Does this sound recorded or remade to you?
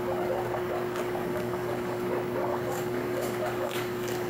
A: remade